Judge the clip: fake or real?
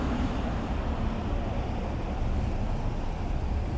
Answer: real